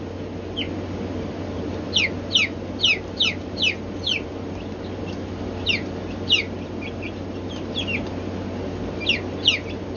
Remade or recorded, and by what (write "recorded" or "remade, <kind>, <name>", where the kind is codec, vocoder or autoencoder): recorded